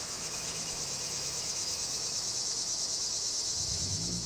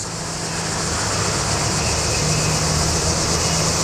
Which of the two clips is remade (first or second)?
first